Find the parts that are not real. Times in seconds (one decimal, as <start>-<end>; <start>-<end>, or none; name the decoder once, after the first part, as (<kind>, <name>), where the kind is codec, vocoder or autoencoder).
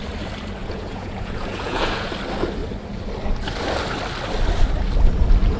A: 0.6-2.1 (vocoder, Vocos)